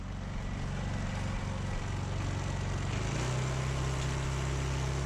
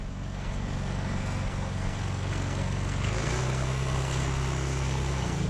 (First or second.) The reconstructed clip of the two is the second